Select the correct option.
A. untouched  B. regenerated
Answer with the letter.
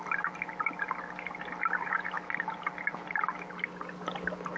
A